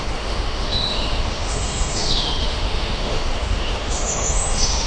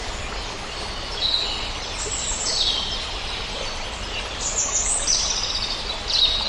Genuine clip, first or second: second